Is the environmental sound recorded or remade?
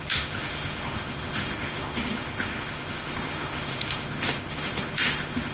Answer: remade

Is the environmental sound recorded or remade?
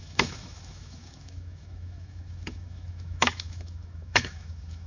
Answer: remade